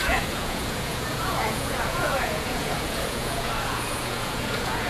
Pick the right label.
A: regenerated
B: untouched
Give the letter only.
A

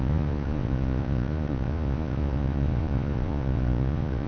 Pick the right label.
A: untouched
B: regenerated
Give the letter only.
B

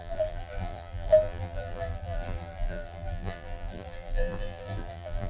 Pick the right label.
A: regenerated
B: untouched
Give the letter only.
A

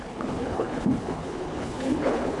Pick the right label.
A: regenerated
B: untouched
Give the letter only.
A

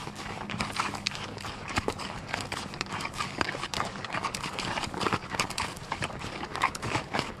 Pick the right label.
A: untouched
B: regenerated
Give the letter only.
B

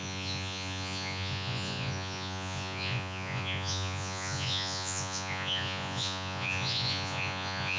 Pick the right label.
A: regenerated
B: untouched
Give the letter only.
A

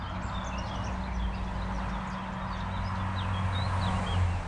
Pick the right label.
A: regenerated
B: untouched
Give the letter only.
B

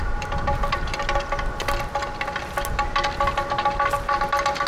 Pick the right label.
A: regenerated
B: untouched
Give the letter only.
B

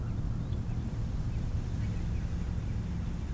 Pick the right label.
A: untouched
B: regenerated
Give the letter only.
A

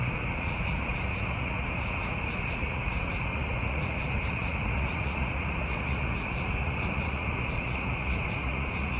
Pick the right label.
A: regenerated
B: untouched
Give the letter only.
A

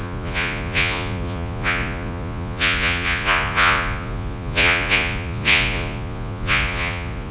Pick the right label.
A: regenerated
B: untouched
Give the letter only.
A